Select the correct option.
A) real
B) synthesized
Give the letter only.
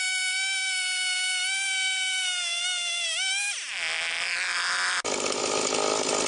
A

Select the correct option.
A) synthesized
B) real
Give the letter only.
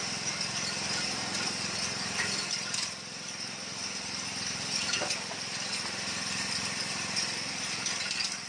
B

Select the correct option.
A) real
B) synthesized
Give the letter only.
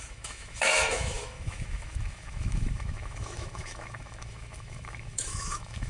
B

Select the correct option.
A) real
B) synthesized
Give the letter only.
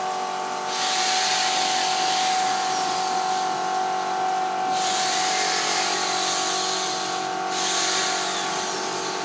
A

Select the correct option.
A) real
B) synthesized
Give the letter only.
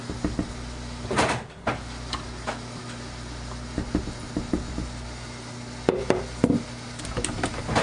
A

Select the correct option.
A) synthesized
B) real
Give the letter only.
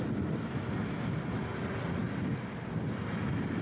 B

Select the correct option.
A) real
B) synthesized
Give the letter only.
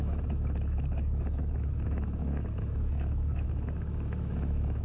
B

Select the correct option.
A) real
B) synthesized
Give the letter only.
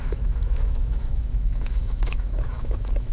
B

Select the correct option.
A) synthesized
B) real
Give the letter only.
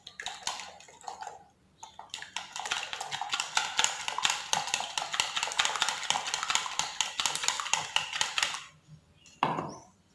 B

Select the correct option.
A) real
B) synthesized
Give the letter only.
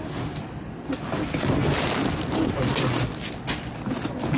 A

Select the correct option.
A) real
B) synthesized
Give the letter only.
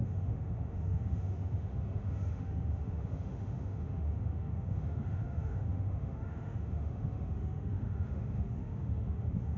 B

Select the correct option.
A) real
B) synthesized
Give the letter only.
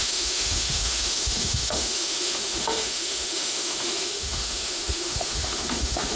B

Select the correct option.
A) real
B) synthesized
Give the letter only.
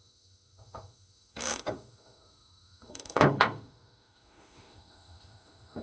B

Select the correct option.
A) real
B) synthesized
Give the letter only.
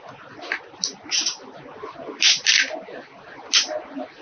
A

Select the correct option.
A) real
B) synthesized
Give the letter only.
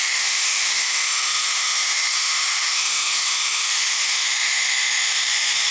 B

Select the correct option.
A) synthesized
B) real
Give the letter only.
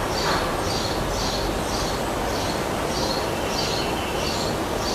B